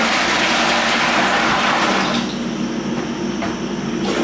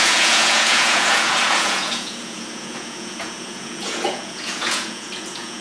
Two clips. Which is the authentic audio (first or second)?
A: first